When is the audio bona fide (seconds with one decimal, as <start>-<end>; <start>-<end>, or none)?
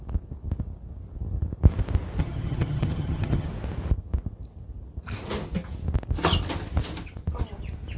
0.0-2.2; 3.5-8.0